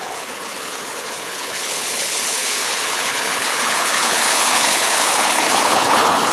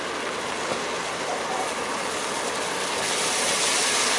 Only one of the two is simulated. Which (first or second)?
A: first